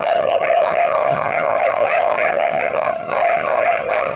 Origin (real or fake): fake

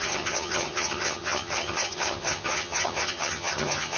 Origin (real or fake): fake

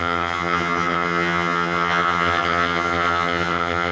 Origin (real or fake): fake